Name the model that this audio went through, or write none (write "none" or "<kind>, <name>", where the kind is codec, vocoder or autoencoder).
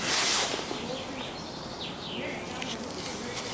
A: none